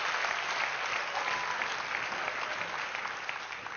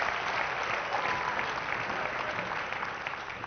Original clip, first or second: first